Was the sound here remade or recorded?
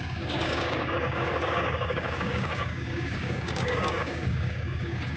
remade